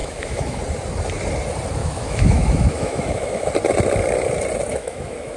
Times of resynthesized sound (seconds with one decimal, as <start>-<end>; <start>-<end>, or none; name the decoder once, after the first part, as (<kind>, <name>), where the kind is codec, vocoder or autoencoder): 0.0-0.6 (autoencoder, DAC-VAE); 1.8-3.5; 4.7-5.4